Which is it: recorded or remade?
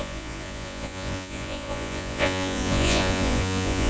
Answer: remade